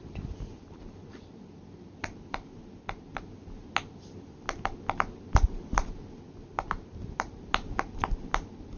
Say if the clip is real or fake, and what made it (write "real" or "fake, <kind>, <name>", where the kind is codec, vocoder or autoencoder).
real